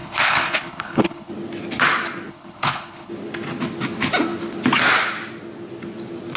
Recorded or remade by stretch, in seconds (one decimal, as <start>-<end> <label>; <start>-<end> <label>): 0.0-1.3 remade; 1.3-2.3 recorded; 2.3-3.1 remade; 3.1-6.4 recorded